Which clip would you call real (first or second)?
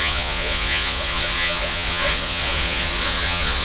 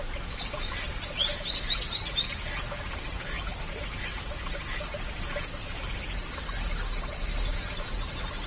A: second